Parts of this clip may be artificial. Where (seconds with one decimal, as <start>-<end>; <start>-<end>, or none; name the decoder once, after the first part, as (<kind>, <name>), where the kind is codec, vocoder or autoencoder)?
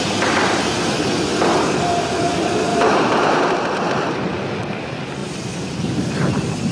2.7-3.5 (vocoder, BigVGAN v2); 5.2-5.8